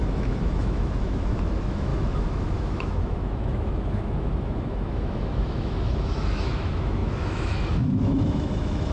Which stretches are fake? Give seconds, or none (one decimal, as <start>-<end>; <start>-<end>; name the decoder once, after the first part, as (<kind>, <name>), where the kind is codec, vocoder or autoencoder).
0.0-8.9 (autoencoder, DAC-VAE)